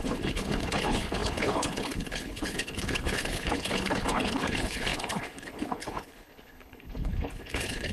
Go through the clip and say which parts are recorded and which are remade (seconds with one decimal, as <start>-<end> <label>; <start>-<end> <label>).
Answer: 0.0-7.9 remade